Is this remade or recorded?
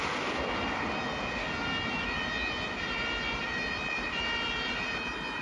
recorded